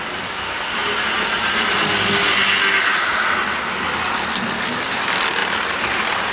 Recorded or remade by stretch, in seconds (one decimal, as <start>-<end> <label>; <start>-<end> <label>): 0.0-6.3 recorded